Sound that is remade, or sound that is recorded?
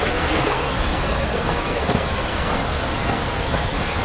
remade